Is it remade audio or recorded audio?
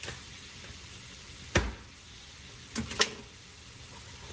recorded